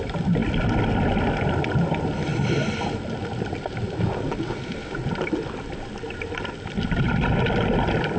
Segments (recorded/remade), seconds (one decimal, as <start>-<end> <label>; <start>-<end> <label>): 0.0-8.2 recorded